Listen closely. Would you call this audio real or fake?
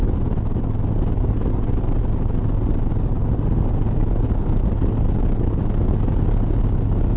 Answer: real